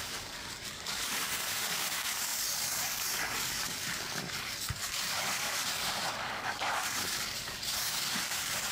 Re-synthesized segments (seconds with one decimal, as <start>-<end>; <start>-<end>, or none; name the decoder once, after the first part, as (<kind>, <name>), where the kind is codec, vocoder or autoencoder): 0.0-8.7 (codec, DAC)